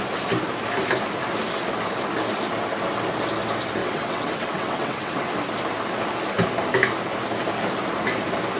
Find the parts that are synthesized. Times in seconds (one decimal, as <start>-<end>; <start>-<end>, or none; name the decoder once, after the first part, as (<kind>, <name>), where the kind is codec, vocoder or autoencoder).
3.8-5.3 (vocoder, WaveNeXt)